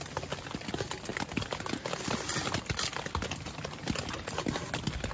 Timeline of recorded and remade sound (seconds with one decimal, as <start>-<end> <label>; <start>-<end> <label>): 0.0-5.1 recorded